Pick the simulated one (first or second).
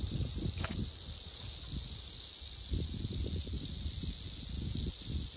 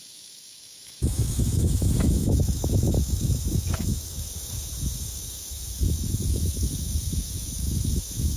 second